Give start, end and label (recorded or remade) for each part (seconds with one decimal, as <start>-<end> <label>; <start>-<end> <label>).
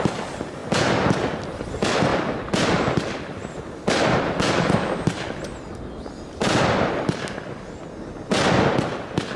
0.0-9.4 recorded